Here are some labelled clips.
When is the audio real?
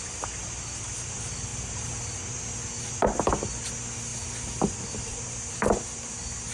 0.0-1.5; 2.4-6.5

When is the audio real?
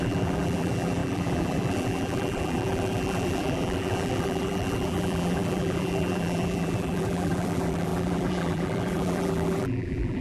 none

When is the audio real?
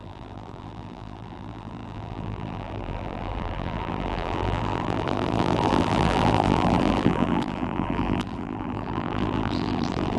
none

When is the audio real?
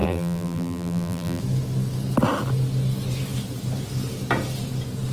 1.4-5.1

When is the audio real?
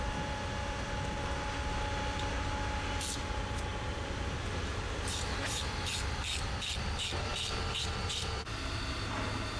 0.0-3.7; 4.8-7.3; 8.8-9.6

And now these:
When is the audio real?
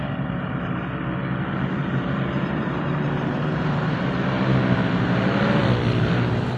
0.0-1.8; 4.0-6.6